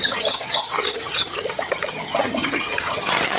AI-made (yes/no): yes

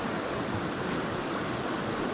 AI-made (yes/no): no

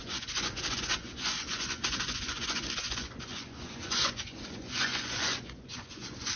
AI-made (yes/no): yes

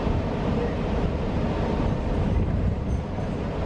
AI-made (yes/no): yes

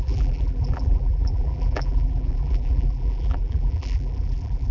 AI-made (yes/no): yes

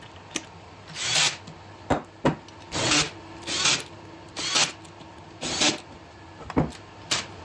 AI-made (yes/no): no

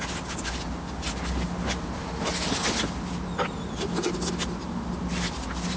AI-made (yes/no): no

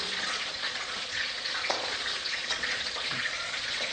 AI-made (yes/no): yes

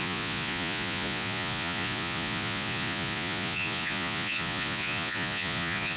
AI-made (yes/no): yes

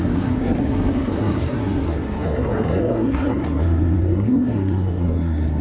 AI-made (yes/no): yes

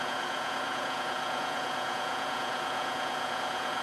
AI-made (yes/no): yes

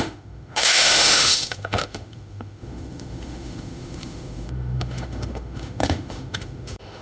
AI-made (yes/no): yes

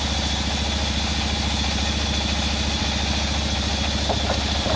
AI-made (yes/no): no